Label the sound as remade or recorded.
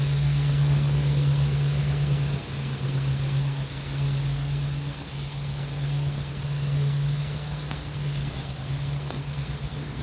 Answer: remade